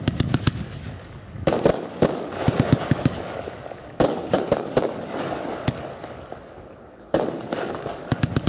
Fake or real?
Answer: fake